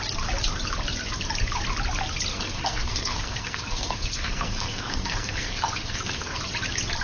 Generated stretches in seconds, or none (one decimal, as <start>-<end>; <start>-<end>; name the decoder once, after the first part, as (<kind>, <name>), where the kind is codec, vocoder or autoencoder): 2.3-6.4 (codec, SNAC)